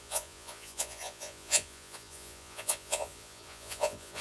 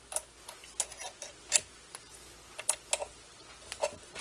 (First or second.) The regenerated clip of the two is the first